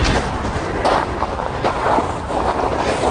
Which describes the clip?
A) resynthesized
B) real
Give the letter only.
B